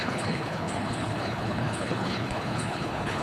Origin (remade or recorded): remade